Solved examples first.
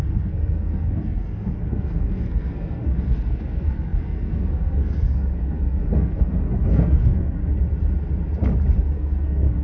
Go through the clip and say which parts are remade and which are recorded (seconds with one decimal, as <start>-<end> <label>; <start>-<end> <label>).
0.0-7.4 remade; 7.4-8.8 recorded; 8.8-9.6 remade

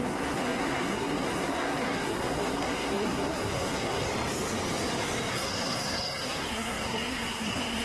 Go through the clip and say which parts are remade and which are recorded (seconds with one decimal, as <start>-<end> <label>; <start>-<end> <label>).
0.0-4.1 remade; 4.1-5.3 recorded; 5.3-7.8 remade

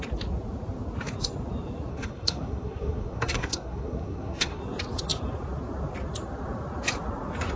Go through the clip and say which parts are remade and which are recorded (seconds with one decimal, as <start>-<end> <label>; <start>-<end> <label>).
0.0-1.9 recorded; 1.9-4.6 remade; 4.6-7.6 recorded